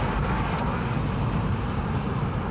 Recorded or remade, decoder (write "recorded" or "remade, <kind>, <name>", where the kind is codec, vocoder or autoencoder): recorded